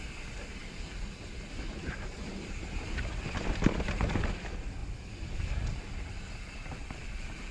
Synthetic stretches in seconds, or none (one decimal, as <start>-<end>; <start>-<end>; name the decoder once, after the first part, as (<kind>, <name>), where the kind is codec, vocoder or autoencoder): none